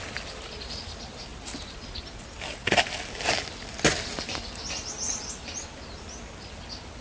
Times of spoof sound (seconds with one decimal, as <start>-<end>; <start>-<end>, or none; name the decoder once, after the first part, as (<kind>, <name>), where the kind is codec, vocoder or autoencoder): none